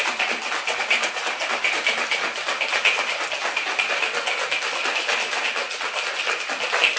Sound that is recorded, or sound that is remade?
recorded